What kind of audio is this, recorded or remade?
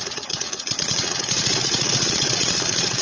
remade